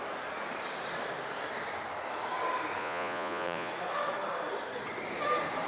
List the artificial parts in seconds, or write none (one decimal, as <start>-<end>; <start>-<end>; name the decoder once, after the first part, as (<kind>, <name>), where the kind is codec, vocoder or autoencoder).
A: 2.8-3.7 (vocoder, Vocos)